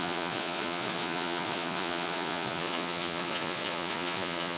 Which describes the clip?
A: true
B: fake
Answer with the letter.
B